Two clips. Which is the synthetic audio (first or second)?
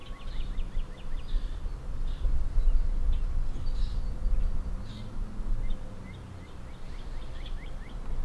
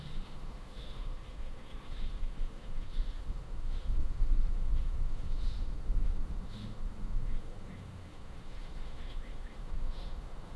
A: second